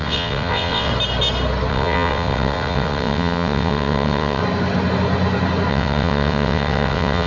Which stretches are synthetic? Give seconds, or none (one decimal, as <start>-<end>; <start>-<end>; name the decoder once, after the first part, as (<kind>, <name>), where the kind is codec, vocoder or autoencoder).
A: 0.0-0.9 (vocoder, WaveNeXt); 1.7-4.4; 5.7-7.3